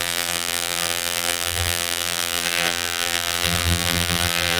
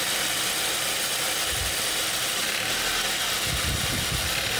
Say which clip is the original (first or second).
second